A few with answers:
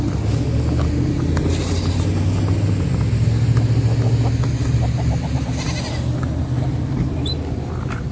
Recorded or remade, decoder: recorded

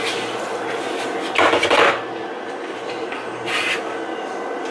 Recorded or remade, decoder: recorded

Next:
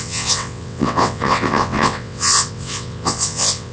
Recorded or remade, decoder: remade, vocoder, WaveNeXt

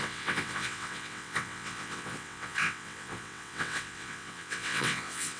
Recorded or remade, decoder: remade, vocoder, WaveNeXt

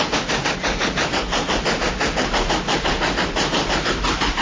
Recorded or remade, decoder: recorded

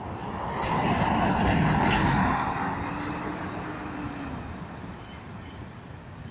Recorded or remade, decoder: recorded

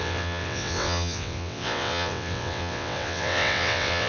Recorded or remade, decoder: remade, vocoder, WaveNeXt